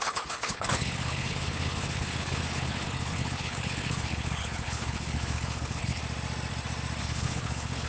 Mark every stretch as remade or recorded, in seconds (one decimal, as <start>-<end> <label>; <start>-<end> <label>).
0.0-6.0 remade; 6.0-7.0 recorded; 7.0-7.9 remade